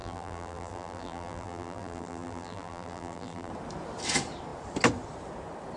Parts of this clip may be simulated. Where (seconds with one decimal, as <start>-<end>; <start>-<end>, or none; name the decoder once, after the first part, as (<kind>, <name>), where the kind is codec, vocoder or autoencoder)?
0.0-3.5 (vocoder, BigVGAN v2)